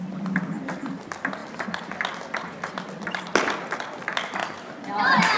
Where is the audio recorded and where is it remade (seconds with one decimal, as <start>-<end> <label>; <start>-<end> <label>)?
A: 0.0-4.4 recorded; 4.4-5.4 remade